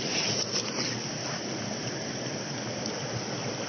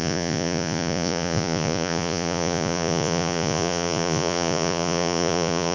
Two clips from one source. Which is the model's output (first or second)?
second